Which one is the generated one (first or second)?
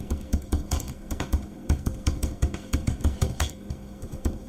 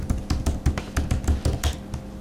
first